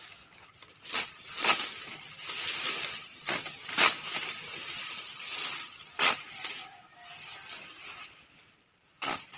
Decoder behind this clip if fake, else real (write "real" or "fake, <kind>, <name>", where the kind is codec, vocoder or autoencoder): real